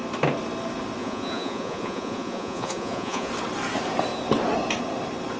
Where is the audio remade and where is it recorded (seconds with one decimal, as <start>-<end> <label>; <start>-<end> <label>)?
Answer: 0.0-1.0 recorded; 1.0-3.3 remade; 3.3-5.4 recorded